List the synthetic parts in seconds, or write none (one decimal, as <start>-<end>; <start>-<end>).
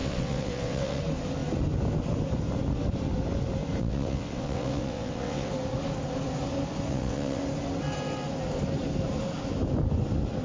0.0-1.0; 3.8-5.5; 6.9-7.4